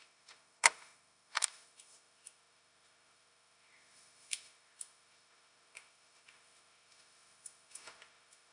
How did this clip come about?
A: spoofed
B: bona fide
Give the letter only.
A